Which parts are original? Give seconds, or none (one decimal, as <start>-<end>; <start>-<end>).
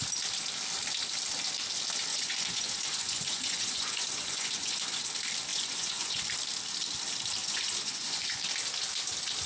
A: 0.0-2.1; 5.0-5.5; 6.2-7.4; 8.4-9.5